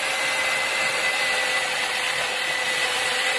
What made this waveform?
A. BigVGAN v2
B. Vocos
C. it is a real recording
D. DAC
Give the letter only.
C